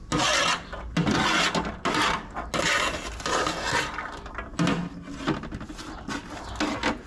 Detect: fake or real real